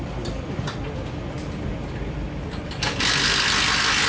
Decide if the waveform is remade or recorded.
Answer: recorded